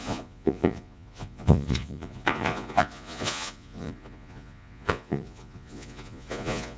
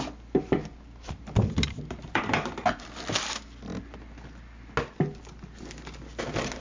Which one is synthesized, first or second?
first